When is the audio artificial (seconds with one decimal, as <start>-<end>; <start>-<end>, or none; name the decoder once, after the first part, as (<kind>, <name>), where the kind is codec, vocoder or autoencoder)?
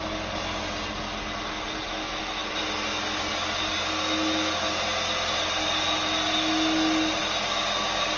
none